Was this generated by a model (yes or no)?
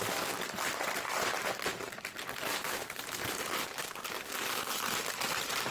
yes